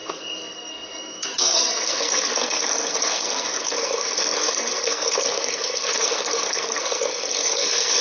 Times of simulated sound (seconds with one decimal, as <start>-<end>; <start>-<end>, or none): 0.0-8.0